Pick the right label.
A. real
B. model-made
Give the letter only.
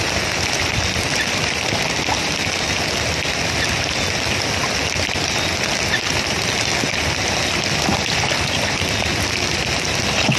A